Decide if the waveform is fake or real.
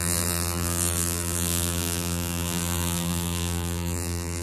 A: fake